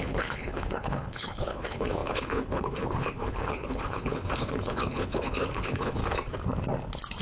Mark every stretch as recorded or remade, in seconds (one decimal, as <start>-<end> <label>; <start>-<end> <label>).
0.0-6.0 remade; 6.0-7.2 recorded